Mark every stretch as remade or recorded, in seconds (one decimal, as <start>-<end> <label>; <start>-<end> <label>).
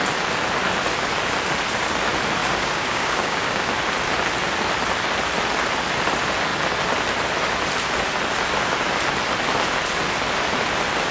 0.0-2.4 recorded; 2.4-3.7 remade; 3.7-11.1 recorded